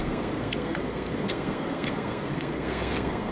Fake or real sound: fake